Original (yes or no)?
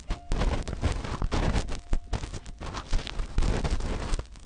yes